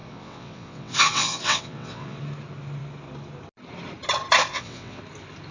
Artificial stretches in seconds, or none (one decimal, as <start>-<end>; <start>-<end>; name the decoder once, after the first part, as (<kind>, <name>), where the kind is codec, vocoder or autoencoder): 0.0-2.2 (vocoder, WaveNeXt); 4.5-5.0